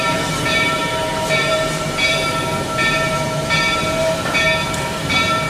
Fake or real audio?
fake